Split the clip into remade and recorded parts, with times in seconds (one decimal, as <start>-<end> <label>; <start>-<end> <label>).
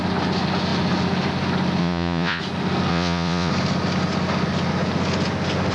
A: 0.0-1.8 recorded; 1.8-2.4 remade; 2.4-2.9 recorded; 2.9-3.5 remade; 3.5-5.7 recorded